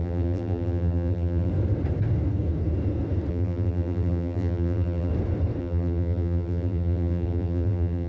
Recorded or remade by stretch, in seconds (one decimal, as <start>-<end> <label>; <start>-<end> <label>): 0.0-1.5 remade; 1.5-3.3 recorded; 3.3-5.1 remade; 5.1-5.6 recorded; 5.6-8.1 remade